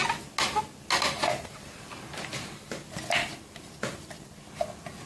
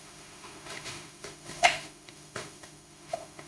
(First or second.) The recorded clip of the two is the first